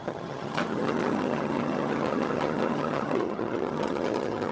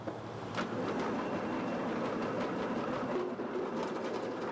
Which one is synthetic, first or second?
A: first